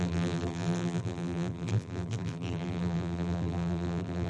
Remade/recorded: remade